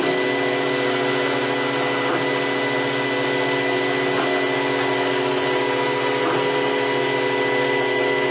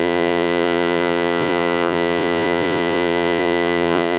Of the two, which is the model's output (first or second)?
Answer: second